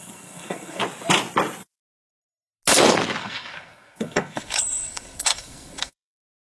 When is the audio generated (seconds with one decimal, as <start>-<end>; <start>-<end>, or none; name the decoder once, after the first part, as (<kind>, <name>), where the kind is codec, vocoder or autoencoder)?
0.0-0.8 (codec, SNAC); 3.2-6.4